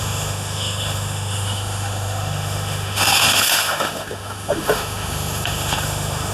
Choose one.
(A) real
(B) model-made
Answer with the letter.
B